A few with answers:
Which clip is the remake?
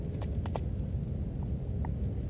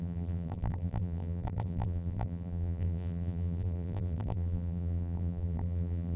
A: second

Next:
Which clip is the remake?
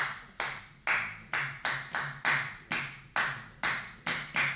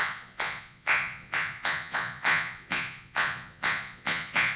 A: second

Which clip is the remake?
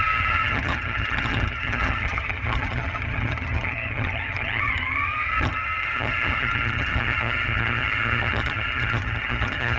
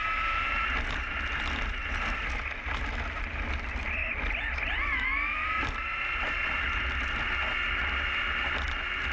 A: first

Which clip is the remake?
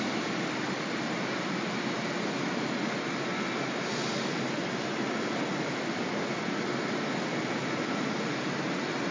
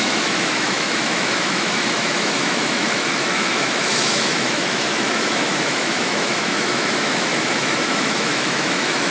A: second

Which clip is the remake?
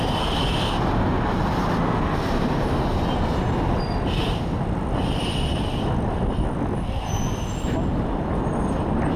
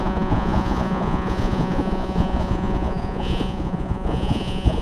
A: second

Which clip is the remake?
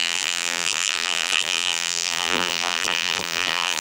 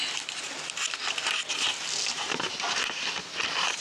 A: first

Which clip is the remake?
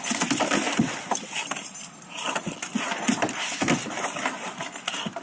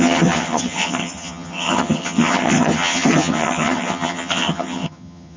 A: second